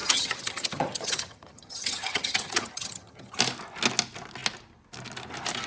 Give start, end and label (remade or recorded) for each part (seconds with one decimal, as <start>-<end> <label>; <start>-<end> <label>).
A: 0.0-3.4 remade; 3.4-5.7 recorded